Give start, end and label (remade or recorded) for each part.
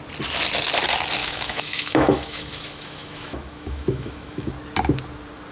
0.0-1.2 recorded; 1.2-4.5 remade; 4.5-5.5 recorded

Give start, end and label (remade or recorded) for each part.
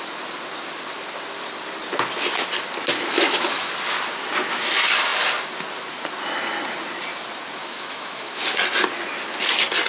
0.0-3.1 recorded; 3.1-3.7 remade; 3.7-7.6 recorded; 7.6-8.4 remade; 8.4-9.9 recorded